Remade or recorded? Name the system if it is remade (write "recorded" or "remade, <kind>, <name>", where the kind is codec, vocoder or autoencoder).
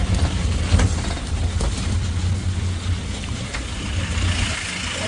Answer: recorded